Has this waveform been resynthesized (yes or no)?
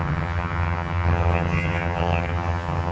yes